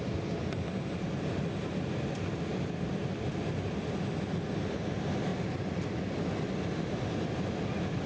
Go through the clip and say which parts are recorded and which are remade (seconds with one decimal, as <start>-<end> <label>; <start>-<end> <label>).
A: 0.0-8.1 recorded